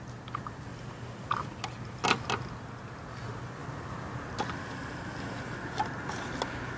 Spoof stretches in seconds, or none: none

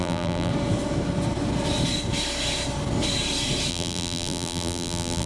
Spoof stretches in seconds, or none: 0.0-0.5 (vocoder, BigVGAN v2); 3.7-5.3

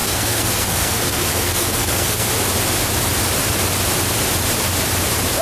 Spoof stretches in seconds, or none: 0.0-2.3 (codec, SNAC)

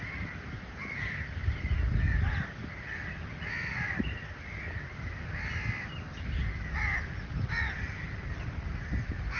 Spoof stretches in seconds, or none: none

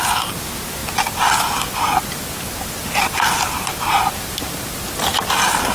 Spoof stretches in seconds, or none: none